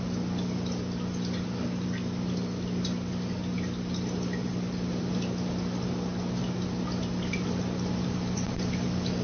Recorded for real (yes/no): yes